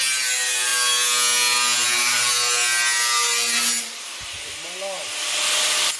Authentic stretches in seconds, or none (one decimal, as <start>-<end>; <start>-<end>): 0.0-6.0